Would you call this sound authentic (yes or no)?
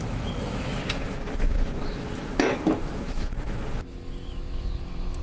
no